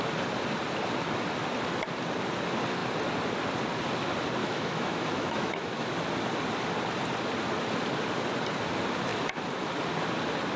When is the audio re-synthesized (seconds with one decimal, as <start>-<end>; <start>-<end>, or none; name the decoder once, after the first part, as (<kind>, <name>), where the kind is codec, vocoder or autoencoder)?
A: 4.4-5.9 (autoencoder, DAC-VAE)